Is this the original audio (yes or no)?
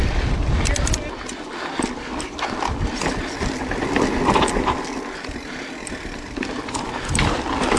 yes